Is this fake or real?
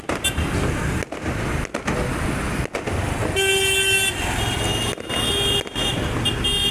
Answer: real